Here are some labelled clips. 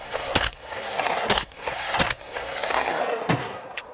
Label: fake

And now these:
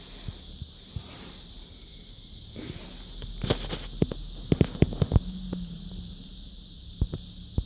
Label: real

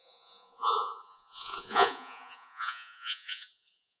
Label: fake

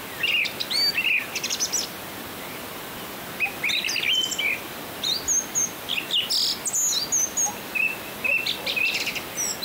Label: real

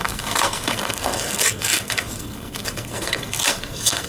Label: fake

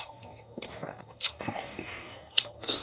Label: fake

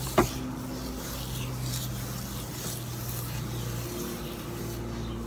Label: real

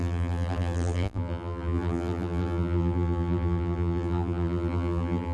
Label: fake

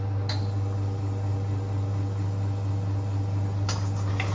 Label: real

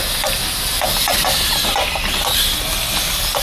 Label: real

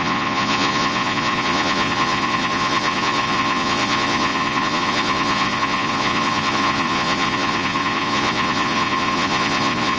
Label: fake